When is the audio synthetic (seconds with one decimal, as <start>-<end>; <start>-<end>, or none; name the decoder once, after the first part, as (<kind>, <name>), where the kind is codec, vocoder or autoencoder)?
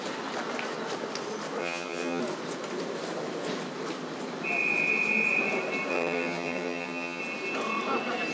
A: 1.6-2.2 (vocoder, HiFi-GAN); 5.9-7.2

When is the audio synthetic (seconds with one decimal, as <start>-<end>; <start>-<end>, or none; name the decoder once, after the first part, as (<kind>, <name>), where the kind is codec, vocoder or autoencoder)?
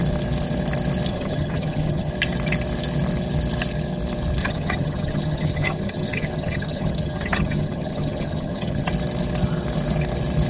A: 1.1-2.1 (vocoder, HiFi-GAN); 4.4-8.9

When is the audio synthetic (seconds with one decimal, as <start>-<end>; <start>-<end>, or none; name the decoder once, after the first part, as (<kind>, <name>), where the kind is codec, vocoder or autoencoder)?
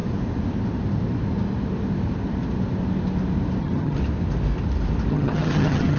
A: 3.6-4.0 (vocoder, HiFi-GAN); 5.1-6.0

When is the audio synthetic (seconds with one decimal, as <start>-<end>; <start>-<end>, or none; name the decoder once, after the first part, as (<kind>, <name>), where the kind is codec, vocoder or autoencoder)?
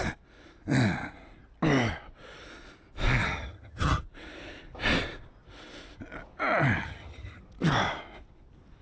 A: 3.2-4.0 (vocoder, HiFi-GAN); 6.8-7.4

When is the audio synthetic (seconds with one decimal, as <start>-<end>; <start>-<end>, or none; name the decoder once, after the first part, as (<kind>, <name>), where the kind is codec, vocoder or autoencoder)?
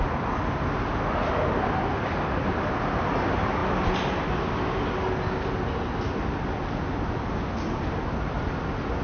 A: none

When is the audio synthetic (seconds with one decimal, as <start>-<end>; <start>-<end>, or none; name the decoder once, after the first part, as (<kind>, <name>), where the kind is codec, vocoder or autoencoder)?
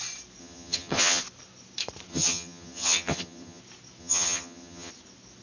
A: 0.4-1.2 (vocoder, HiFi-GAN); 2.1-3.6; 4.0-4.9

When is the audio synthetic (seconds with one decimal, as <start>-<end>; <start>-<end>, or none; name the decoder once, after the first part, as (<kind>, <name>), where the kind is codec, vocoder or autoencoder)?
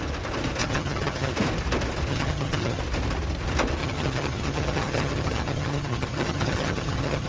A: 0.6-1.3 (vocoder, HiFi-GAN); 2.1-2.8; 3.8-7.3